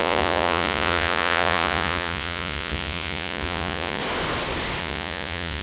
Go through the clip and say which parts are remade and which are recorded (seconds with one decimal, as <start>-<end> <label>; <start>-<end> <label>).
0.0-4.0 remade; 4.0-4.8 recorded; 4.8-5.6 remade

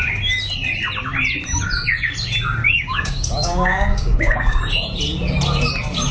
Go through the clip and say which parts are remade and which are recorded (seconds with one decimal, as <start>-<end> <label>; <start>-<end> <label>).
0.0-2.6 recorded; 2.6-4.6 remade; 4.6-6.1 recorded

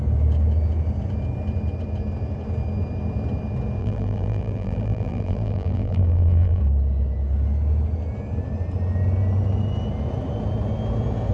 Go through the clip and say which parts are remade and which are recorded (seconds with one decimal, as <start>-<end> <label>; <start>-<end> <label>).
0.0-3.8 recorded; 3.8-6.6 remade; 6.6-11.3 recorded

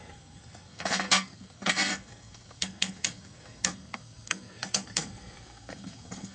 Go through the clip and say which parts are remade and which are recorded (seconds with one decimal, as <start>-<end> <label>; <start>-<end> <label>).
0.0-6.3 remade

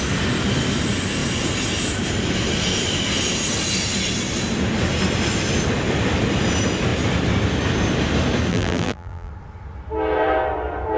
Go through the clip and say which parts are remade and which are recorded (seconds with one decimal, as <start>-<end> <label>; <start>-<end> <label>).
0.0-8.5 recorded; 8.5-9.3 remade; 9.3-11.0 recorded